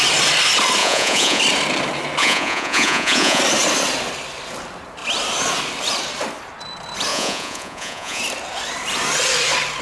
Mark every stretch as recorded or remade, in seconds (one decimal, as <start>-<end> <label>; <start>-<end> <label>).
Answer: 0.0-0.8 recorded; 0.8-1.4 remade; 1.4-2.2 recorded; 2.2-3.4 remade; 3.4-7.1 recorded; 7.1-8.2 remade; 8.2-9.8 recorded